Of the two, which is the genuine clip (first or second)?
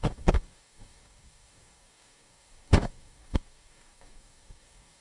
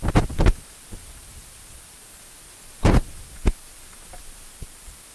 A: second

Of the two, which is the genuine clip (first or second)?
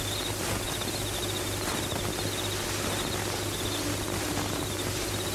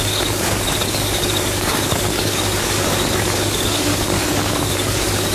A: first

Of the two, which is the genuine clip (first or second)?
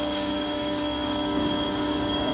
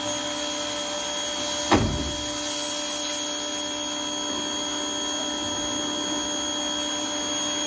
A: second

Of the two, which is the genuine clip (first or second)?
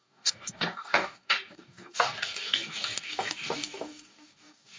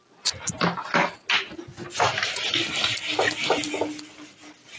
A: second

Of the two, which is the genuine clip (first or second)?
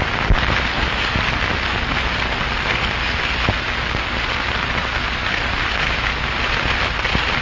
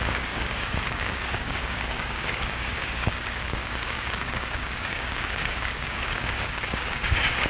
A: first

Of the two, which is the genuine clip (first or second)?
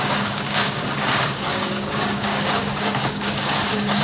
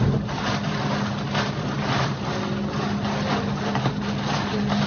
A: second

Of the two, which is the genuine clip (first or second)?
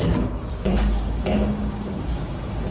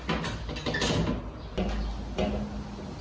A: second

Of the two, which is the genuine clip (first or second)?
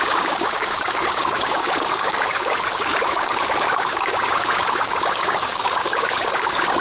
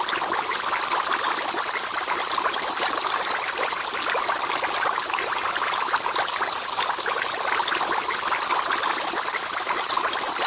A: second